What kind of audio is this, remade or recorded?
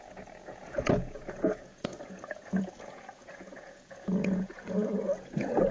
remade